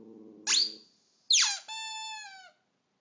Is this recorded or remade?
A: recorded